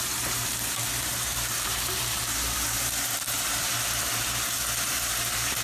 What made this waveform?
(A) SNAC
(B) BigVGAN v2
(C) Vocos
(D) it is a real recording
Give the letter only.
B